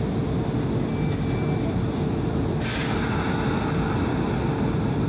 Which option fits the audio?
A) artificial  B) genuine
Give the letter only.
B